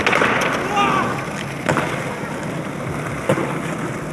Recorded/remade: recorded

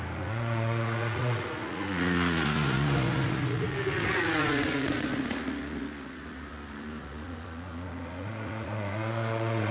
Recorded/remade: remade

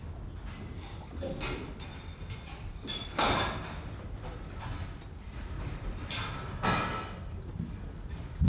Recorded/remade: recorded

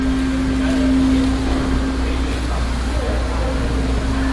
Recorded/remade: recorded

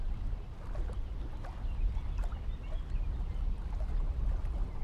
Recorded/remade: recorded